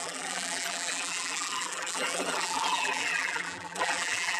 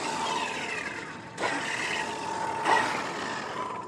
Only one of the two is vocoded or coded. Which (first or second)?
first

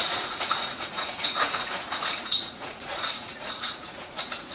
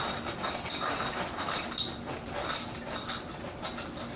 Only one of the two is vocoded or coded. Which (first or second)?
first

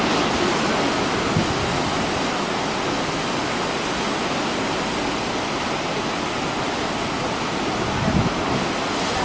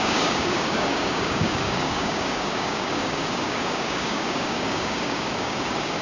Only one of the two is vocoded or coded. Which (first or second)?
second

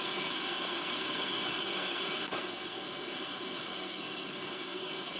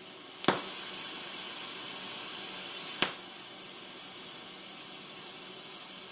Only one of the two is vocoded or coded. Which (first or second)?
first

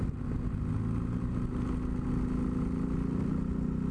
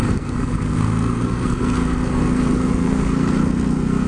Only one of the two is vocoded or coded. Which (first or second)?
second